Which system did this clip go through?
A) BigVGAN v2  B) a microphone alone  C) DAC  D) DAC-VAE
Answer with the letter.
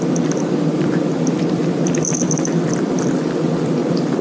A